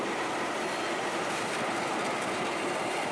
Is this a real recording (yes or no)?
yes